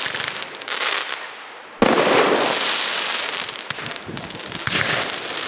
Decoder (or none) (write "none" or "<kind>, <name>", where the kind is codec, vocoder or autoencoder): none